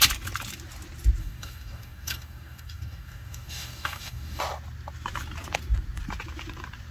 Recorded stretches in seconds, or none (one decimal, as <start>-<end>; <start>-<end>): 0.0-1.2; 4.4-6.9